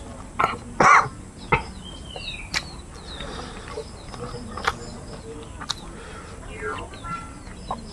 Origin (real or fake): real